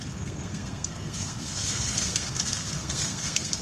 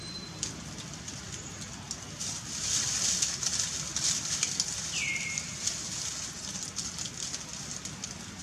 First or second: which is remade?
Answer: first